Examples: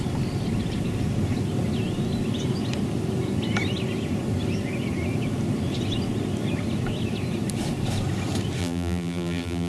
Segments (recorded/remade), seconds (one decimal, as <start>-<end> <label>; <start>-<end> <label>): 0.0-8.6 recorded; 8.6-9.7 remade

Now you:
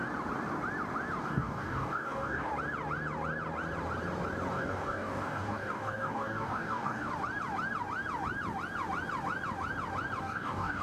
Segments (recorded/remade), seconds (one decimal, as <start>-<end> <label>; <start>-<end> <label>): 0.0-1.2 recorded; 1.2-2.5 remade; 2.5-4.5 recorded; 4.5-7.1 remade; 7.1-10.2 recorded; 10.2-10.8 remade

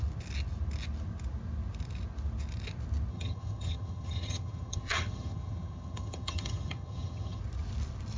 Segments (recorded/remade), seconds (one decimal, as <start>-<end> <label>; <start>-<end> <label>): 0.0-3.1 recorded; 3.1-7.4 remade; 7.4-8.2 recorded

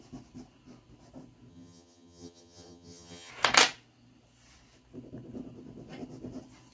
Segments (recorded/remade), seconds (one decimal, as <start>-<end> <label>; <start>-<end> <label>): 0.0-1.5 recorded; 1.5-3.3 remade; 3.3-6.7 recorded